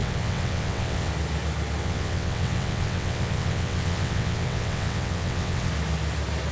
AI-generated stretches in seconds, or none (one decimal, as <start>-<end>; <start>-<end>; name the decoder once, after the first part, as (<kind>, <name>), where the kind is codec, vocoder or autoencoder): 0.0-1.1 (vocoder, WaveNeXt); 1.8-5.7